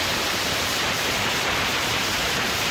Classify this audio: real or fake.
fake